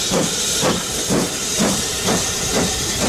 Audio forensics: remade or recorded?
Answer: remade